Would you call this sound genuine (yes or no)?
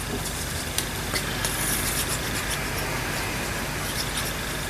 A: yes